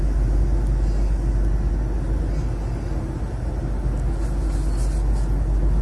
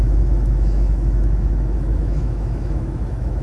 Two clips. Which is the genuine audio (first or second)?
first